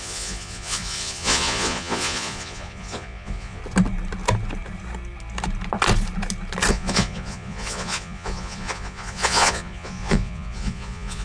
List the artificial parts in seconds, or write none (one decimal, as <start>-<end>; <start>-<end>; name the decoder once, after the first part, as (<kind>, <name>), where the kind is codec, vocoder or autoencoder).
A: 0.0-3.6 (vocoder, Vocos); 6.7-11.2